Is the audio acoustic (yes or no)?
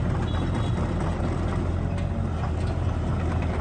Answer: yes